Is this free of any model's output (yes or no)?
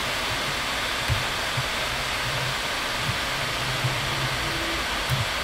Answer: yes